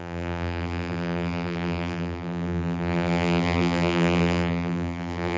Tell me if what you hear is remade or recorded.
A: remade